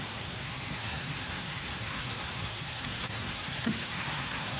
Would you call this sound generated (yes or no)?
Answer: yes